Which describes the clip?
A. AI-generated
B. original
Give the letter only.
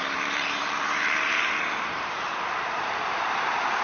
A